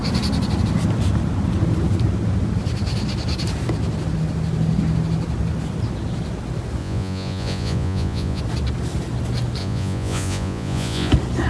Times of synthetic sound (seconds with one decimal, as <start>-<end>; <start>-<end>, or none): 6.8-8.4; 9.6-11.1

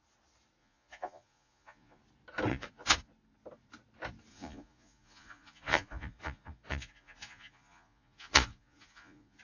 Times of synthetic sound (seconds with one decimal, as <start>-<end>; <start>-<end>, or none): 0.6-2.0; 2.5-3.1; 4.3-9.4